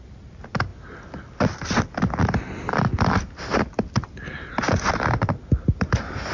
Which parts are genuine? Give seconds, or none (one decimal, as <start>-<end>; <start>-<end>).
0.0-6.3